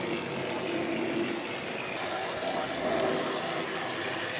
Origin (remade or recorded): recorded